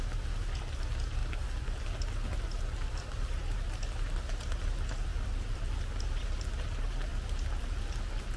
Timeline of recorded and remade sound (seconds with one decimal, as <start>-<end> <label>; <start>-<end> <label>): 0.0-8.4 recorded